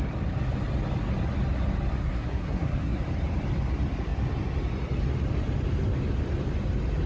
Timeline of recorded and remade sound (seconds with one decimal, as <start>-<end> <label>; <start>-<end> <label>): 0.0-2.0 recorded; 2.0-3.0 remade; 3.0-7.1 recorded